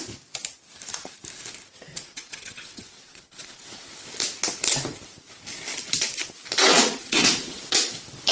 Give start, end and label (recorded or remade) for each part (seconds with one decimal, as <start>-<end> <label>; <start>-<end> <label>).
0.0-1.9 recorded; 1.9-3.9 remade; 3.9-6.7 recorded; 6.7-7.6 remade; 7.6-8.3 recorded